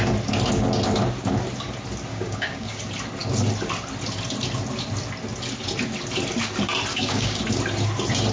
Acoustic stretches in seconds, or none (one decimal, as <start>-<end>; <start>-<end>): 0.0-2.1; 2.8-6.9; 7.4-8.3